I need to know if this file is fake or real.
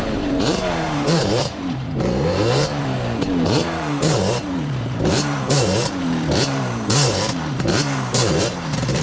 fake